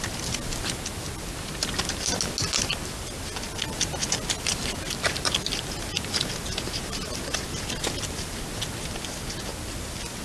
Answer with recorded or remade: recorded